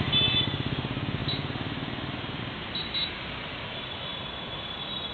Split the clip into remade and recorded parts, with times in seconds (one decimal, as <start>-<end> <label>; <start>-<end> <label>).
0.0-5.1 recorded

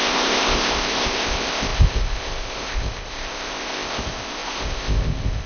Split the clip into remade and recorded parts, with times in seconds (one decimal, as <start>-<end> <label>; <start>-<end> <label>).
0.0-5.5 remade

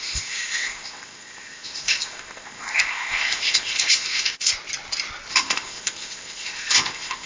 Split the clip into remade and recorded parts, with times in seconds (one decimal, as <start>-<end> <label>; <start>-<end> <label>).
0.0-4.5 remade; 4.5-5.3 recorded; 5.3-7.3 remade

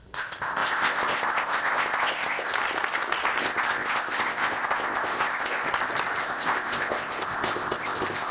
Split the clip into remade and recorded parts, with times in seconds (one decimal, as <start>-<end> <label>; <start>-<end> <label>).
0.0-2.5 remade; 2.5-3.4 recorded; 3.4-5.6 remade; 5.6-6.2 recorded; 6.2-8.3 remade

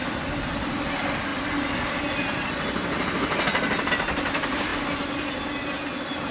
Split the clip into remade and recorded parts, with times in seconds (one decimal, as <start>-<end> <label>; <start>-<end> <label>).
0.0-6.3 recorded

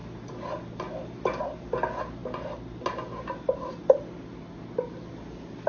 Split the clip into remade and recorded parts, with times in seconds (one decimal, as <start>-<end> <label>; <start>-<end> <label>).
0.0-5.7 recorded

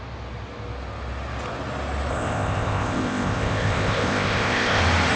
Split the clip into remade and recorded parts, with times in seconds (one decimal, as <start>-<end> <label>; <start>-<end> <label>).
0.0-2.1 recorded; 2.1-4.8 remade; 4.8-5.2 recorded